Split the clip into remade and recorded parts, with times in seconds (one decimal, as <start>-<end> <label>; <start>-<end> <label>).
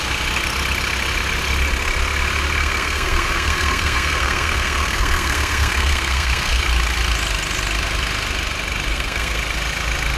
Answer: 0.0-2.6 recorded; 2.6-6.6 remade; 6.6-8.9 recorded; 8.9-9.4 remade; 9.4-10.2 recorded